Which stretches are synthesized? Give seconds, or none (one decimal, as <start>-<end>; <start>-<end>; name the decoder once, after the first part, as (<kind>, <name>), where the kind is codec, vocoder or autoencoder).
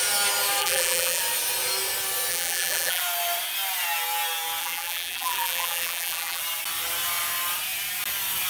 0.6-1.2 (vocoder, BigVGAN v2); 2.3-3.0; 4.6-6.4